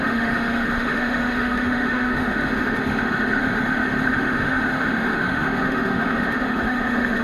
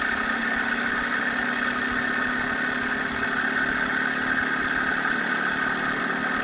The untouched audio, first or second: second